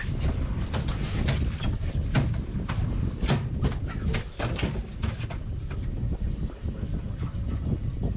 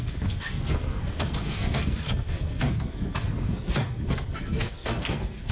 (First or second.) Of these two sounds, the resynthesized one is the second